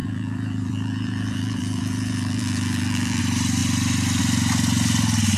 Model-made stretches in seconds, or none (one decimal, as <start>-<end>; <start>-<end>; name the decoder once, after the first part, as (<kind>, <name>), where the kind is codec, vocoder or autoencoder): 0.0-3.2 (vocoder, BigVGAN v2)